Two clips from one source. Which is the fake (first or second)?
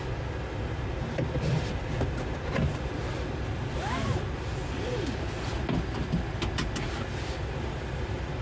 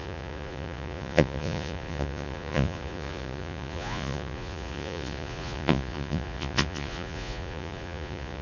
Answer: second